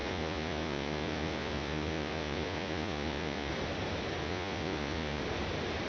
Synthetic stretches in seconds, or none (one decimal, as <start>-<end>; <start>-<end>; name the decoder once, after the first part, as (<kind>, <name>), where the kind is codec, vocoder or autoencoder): 0.0-3.5 (vocoder, Vocos); 4.2-5.2